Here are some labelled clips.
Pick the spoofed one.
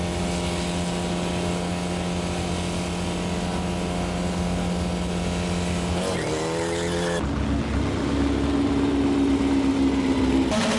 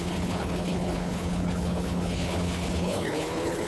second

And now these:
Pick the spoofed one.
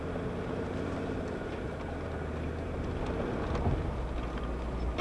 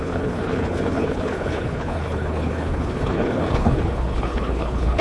second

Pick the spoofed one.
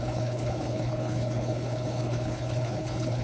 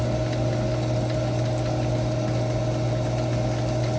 first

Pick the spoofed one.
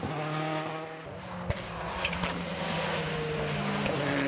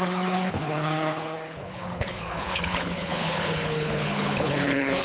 second